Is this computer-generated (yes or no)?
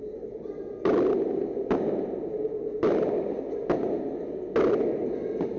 no